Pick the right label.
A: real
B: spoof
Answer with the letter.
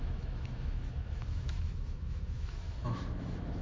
B